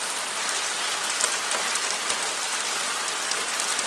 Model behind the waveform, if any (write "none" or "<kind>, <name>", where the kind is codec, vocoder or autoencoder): none